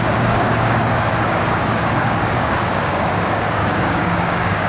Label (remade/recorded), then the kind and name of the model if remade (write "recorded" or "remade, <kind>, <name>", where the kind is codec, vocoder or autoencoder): remade, codec, DAC